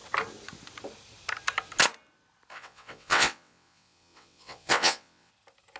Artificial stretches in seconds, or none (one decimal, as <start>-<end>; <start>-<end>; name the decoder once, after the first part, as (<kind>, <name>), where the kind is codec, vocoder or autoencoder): 2.5-5.3 (vocoder, WaveNeXt)